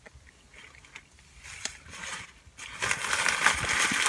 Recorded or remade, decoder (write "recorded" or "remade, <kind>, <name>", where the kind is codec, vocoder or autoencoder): recorded